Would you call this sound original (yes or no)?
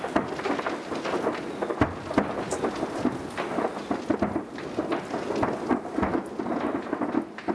yes